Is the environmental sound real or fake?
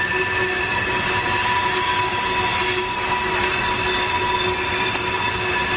real